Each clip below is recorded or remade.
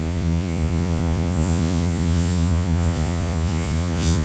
remade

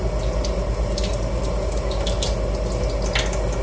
recorded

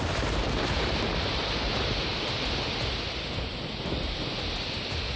recorded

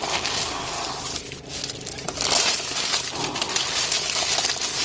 recorded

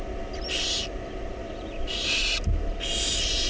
recorded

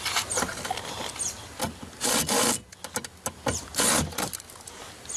recorded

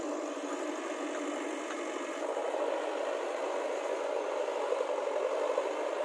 recorded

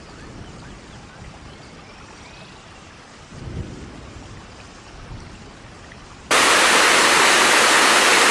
recorded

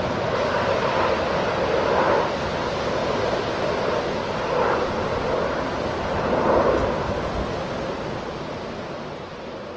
recorded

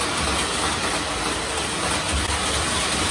recorded